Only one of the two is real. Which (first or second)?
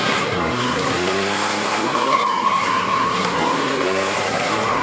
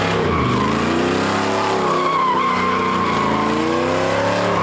second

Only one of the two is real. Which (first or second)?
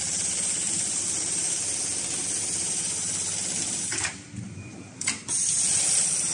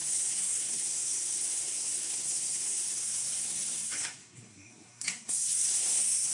first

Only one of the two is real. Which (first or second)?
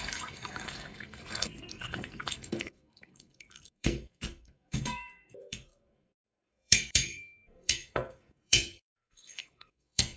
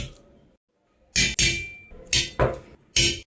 second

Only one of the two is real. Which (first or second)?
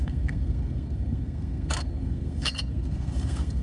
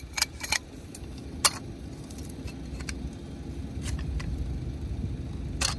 second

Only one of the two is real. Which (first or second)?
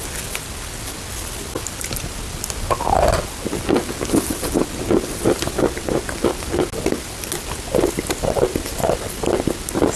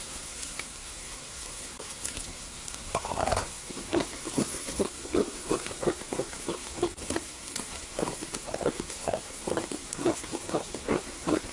first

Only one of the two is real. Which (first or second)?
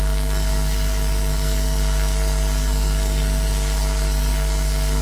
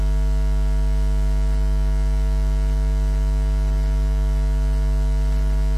second